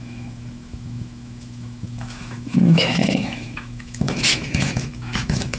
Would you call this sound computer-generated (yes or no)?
yes